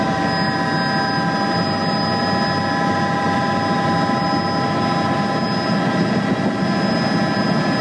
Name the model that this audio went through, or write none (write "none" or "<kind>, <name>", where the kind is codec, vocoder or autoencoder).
none